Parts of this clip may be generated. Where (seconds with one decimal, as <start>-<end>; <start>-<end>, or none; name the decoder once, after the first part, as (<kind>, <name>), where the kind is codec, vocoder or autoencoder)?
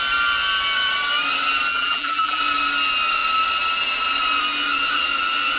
1.7-2.4 (vocoder, BigVGAN v2)